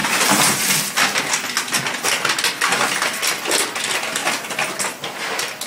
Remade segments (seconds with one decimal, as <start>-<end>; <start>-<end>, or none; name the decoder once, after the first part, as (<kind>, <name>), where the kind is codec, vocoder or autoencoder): 0.0-0.6 (vocoder, BigVGAN v2)